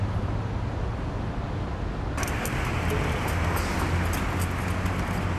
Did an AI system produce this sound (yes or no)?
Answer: no